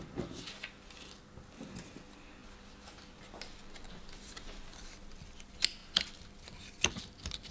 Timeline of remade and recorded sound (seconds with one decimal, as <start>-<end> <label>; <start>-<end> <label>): 0.0-7.5 recorded